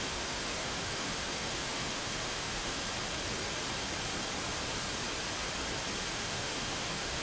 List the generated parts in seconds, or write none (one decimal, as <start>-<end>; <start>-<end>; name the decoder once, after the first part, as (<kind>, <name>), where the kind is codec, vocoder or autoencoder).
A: 0.0-2.8 (autoencoder, DAC-VAE); 6.1-7.2